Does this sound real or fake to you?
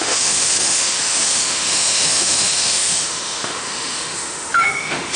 fake